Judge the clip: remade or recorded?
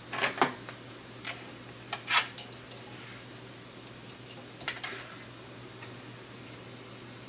recorded